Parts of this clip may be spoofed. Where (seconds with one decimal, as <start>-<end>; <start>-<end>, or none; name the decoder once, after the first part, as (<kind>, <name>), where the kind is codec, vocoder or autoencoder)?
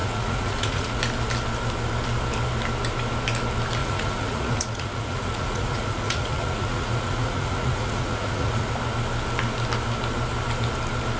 0.0-1.0 (vocoder, Vocos); 3.8-8.7